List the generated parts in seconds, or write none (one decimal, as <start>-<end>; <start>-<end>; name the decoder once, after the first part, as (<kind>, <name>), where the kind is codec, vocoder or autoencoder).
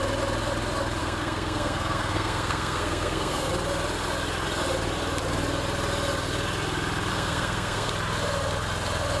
1.0-3.5 (codec, SNAC); 7.1-7.9